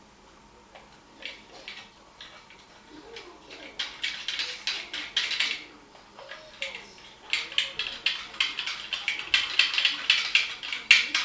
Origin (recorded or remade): recorded